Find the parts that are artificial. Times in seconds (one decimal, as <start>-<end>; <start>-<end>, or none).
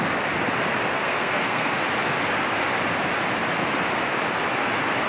0.9-1.7